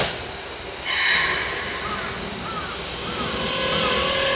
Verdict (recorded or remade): recorded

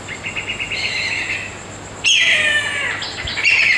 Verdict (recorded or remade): recorded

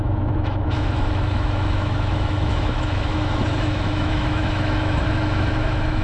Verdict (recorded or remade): remade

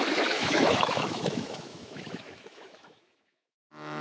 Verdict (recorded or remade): remade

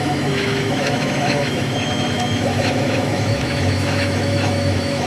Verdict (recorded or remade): remade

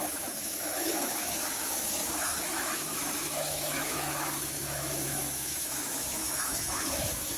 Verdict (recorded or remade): remade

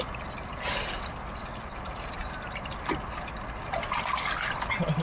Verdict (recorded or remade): recorded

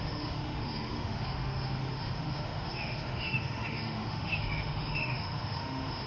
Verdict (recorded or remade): remade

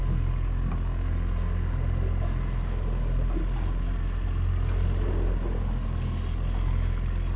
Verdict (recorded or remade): recorded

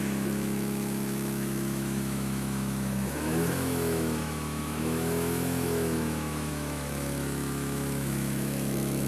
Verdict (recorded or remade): remade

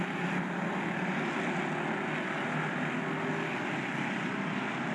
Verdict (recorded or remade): recorded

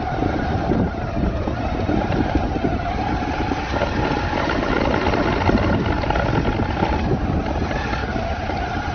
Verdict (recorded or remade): recorded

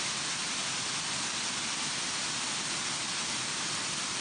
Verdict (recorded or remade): recorded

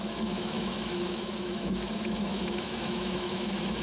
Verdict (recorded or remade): remade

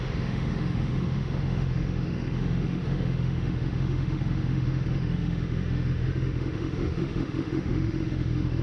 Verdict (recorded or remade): remade